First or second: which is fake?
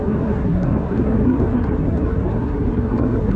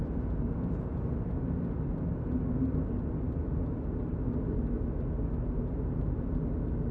first